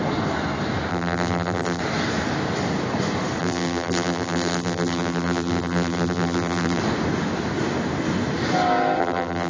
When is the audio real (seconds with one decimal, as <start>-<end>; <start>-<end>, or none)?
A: 0.0-0.9; 1.8-3.4; 6.8-9.0